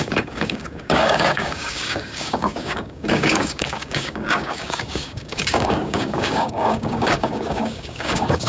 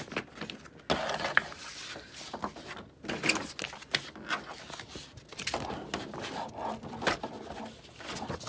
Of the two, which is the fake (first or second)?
first